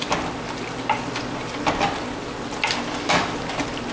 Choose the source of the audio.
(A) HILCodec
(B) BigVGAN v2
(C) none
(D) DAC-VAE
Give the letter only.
C